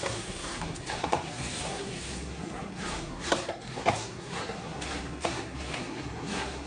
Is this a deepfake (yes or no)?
yes